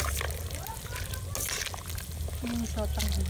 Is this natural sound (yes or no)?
yes